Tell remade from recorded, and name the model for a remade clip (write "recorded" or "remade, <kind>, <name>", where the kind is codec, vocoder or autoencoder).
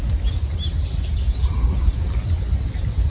recorded